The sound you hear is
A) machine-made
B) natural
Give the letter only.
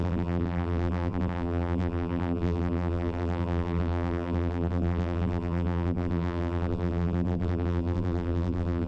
A